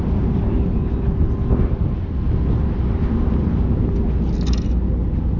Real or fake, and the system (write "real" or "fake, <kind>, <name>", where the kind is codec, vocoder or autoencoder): real